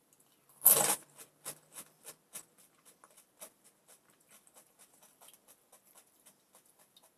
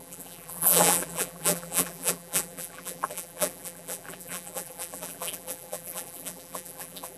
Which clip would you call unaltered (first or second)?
first